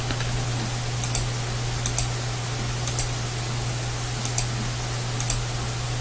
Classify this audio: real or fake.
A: real